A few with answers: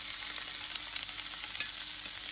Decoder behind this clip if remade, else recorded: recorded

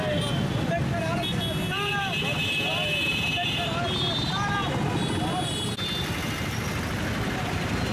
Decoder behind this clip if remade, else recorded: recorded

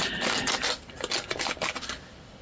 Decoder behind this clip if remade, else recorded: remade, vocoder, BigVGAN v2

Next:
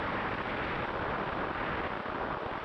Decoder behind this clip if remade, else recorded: recorded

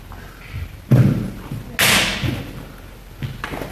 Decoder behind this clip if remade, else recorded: recorded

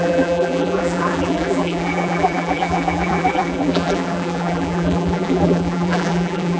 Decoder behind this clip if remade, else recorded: remade, vocoder, BigVGAN v2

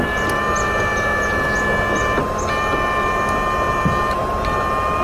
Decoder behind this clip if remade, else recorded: recorded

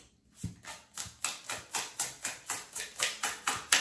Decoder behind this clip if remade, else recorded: recorded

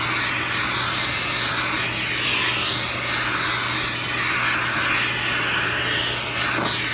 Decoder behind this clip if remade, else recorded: recorded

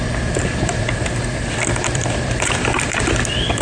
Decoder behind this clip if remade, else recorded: remade, vocoder, BigVGAN v2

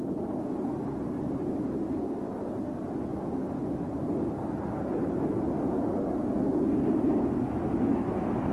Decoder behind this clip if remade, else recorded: recorded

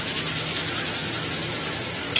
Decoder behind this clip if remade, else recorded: recorded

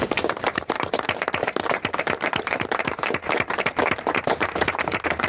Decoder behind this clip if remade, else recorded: remade, vocoder, BigVGAN v2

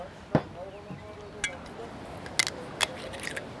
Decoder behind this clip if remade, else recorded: recorded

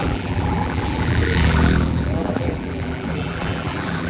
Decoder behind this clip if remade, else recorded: remade, vocoder, BigVGAN v2